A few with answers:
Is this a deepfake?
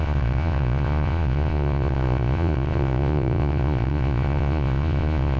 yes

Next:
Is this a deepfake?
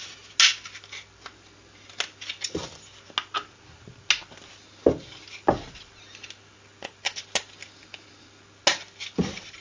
no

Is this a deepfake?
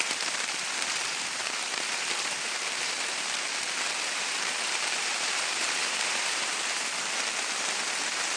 yes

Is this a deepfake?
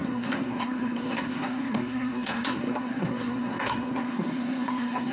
yes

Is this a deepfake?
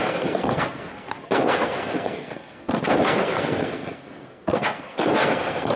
yes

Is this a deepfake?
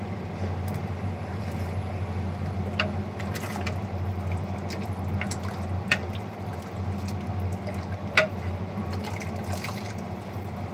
no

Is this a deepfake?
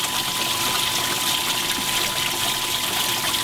no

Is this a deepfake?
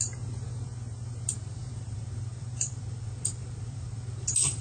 yes